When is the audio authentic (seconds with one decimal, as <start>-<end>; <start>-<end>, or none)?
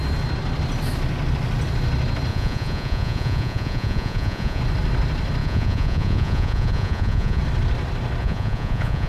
0.0-2.3; 4.6-5.4; 7.4-8.2